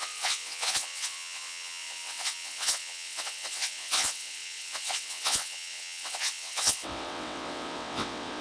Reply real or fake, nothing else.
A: fake